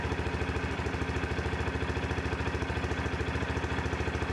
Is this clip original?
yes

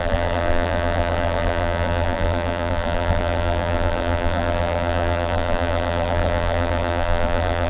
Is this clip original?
no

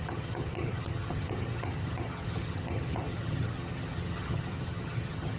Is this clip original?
no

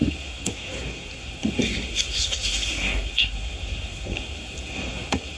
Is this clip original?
no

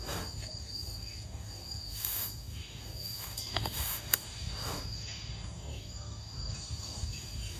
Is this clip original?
no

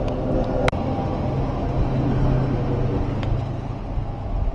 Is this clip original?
yes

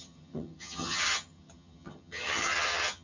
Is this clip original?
no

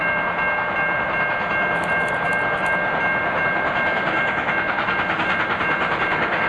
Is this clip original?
yes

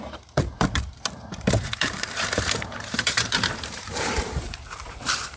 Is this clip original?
no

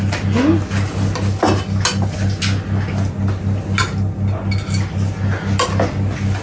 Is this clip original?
yes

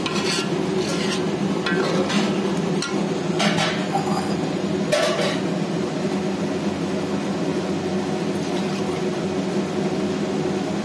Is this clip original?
yes